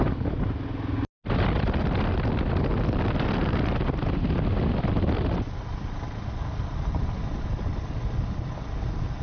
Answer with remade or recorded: recorded